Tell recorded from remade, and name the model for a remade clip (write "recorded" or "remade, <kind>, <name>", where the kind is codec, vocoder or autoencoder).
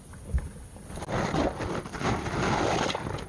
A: recorded